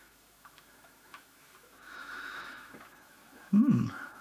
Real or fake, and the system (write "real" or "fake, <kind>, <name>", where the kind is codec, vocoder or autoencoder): fake, autoencoder, DAC-VAE